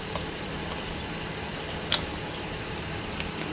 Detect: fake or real real